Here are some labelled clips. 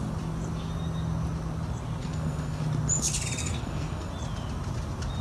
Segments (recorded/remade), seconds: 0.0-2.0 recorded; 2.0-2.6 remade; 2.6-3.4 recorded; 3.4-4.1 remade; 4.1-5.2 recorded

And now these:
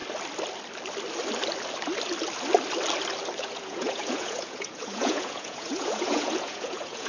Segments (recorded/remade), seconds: 0.0-3.4 recorded; 3.4-7.1 remade

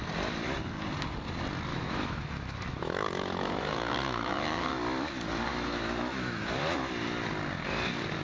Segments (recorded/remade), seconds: 0.0-1.7 recorded; 1.7-4.7 remade; 4.7-5.5 recorded; 5.5-6.9 remade; 6.9-8.2 recorded

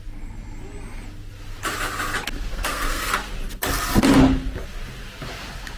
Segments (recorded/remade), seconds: 0.0-2.5 recorded; 2.5-3.1 remade; 3.1-5.8 recorded